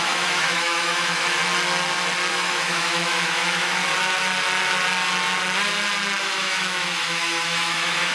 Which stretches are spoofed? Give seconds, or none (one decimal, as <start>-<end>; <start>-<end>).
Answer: 0.0-1.4; 2.3-3.8; 6.2-8.1